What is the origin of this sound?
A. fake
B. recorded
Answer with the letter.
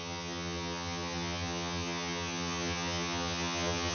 A